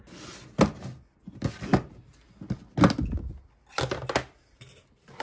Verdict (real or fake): real